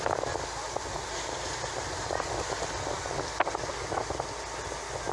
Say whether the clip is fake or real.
real